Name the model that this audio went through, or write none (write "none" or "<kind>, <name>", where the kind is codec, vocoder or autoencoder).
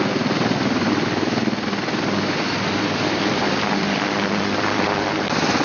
vocoder, BigVGAN v2